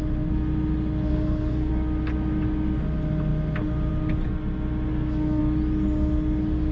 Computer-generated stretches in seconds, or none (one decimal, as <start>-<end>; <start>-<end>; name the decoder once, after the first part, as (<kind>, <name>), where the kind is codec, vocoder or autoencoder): 1.1-1.7 (codec, SNAC); 4.9-5.4

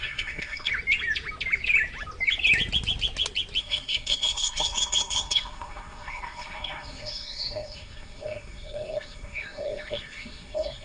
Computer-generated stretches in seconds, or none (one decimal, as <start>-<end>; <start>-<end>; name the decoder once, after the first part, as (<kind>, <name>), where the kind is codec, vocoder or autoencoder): 0.0-0.7 (codec, SNAC); 3.6-10.8

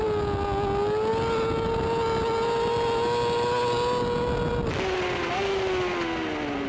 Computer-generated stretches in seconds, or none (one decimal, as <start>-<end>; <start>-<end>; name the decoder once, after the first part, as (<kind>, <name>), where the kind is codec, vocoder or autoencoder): none

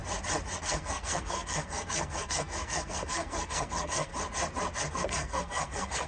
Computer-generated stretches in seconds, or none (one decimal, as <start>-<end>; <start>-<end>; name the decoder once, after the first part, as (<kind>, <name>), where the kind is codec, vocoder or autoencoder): 0.6-4.1 (codec, SNAC); 4.9-6.1

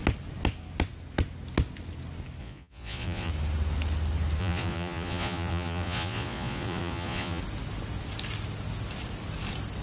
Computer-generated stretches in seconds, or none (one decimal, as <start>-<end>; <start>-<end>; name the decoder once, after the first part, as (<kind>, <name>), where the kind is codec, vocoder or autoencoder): 2.4-3.3 (vocoder, Vocos); 4.4-7.4

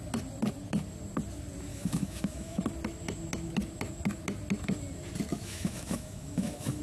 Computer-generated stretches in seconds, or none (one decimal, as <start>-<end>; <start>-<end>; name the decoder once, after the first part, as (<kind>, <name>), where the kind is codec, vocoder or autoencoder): 1.7-2.6 (autoencoder, DAC-VAE); 5.3-6.8